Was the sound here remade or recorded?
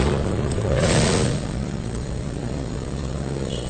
remade